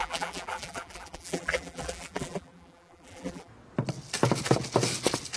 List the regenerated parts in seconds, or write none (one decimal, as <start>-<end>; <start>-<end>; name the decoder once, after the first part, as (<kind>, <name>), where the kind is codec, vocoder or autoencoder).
0.0-3.5 (vocoder, BigVGAN v2)

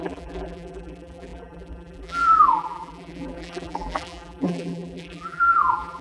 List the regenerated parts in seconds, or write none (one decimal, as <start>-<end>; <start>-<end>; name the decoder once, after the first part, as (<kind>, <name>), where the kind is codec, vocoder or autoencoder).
0.0-6.0 (vocoder, BigVGAN v2)

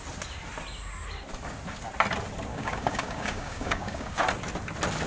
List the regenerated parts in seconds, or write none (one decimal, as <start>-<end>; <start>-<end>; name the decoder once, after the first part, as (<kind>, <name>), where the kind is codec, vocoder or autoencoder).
2.5-4.2 (codec, DAC)

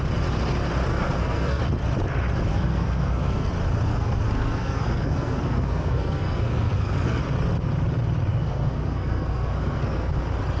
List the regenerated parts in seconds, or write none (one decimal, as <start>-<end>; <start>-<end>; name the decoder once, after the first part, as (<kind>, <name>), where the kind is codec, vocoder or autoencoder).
0.9-1.6 (codec, SNAC); 2.5-3.5; 3.9-7.2; 8.3-10.1

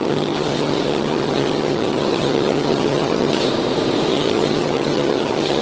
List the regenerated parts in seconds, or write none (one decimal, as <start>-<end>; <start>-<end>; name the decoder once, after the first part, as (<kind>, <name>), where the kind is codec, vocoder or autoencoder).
0.0-3.4 (vocoder, HiFi-GAN); 4.1-5.6

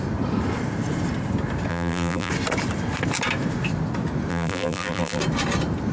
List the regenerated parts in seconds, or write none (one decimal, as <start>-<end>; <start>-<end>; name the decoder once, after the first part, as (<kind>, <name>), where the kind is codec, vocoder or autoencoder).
1.7-2.3 (vocoder, BigVGAN v2); 4.3-5.2

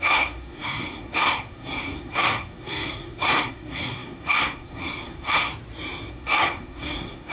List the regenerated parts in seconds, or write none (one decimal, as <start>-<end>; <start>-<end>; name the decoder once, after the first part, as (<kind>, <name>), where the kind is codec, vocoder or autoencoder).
0.0-5.5 (codec, SNAC); 6.1-7.3